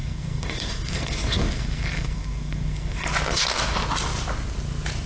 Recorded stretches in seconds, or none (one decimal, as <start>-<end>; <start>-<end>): 3.1-5.1